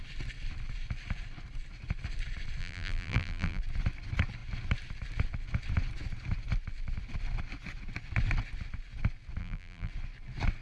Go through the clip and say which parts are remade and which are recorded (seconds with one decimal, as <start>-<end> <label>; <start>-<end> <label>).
0.0-2.6 recorded; 2.6-3.6 remade; 3.6-9.4 recorded; 9.4-9.9 remade; 9.9-10.6 recorded